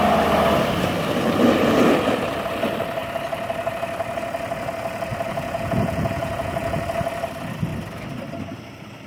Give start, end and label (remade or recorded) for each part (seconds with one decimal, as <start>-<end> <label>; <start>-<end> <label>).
0.0-5.1 recorded; 5.1-6.8 remade; 6.8-9.1 recorded